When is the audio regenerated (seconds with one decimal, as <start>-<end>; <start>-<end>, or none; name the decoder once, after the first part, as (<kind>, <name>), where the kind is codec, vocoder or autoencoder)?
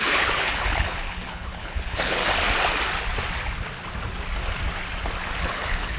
0.0-2.2 (codec, HILCodec); 5.4-6.0